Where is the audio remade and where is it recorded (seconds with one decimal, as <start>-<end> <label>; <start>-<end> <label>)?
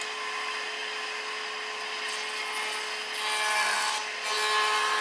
0.0-5.0 recorded